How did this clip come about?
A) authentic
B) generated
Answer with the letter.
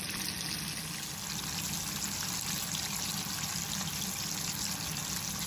A